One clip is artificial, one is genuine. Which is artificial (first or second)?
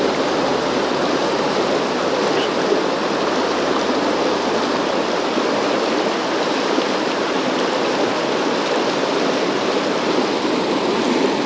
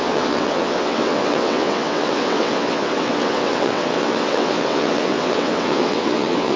second